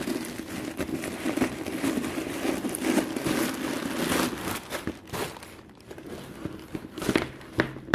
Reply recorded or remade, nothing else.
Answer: recorded